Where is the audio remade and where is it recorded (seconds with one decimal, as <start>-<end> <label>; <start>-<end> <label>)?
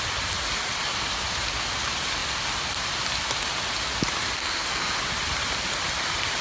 0.0-4.4 recorded; 4.4-5.0 remade; 5.0-6.4 recorded